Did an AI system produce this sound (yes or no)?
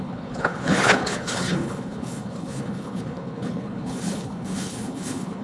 yes